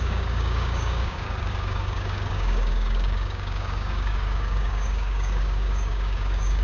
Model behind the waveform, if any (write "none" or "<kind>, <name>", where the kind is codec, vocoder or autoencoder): codec, DAC